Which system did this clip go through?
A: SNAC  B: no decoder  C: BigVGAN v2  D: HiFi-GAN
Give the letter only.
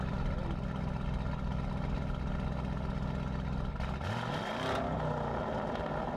B